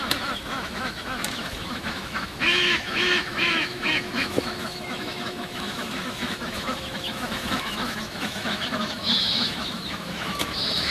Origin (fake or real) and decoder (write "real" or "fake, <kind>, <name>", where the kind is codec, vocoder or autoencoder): fake, autoencoder, DAC-VAE